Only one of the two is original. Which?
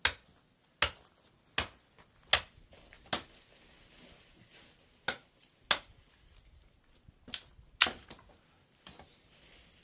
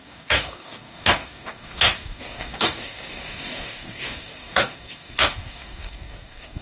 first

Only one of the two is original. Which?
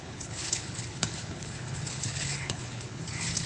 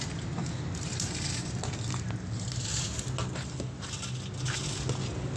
second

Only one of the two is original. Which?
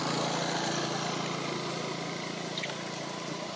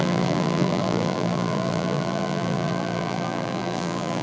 first